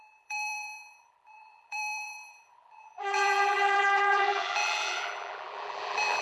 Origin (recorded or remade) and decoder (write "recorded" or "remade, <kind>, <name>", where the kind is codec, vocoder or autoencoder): remade, vocoder, BigVGAN v2